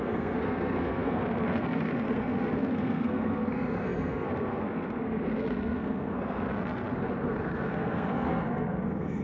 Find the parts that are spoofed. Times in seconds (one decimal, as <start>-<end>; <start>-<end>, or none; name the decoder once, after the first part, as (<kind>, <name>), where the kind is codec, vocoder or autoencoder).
0.0-9.2 (codec, SNAC)